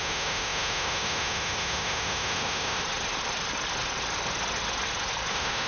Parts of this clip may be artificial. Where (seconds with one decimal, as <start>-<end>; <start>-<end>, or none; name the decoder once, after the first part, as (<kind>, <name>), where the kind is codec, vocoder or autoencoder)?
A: 0.0-2.8 (autoencoder, DAC-VAE); 5.3-5.7